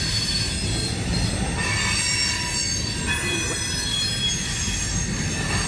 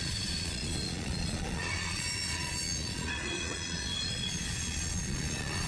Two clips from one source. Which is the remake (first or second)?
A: second